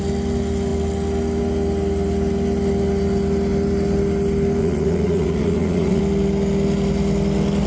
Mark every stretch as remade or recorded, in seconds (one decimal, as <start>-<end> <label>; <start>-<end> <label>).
0.0-4.6 recorded; 4.6-6.0 remade; 6.0-7.7 recorded